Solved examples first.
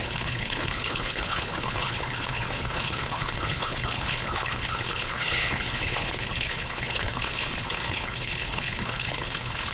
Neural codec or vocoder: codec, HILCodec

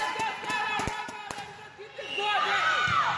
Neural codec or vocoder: none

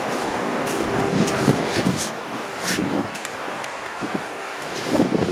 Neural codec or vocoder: codec, DAC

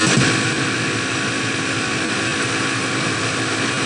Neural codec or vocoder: none